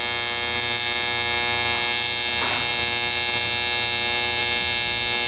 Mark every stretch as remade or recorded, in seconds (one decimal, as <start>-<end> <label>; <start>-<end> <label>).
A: 0.0-5.3 recorded